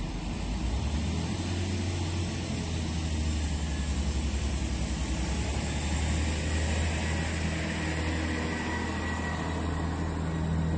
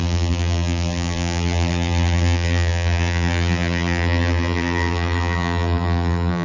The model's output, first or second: second